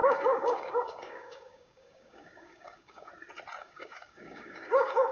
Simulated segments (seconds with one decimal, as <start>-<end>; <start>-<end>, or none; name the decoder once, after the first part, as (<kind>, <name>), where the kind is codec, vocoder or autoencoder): 0.0-3.1 (codec, DAC); 3.6-5.1